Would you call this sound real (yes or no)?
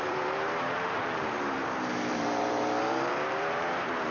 no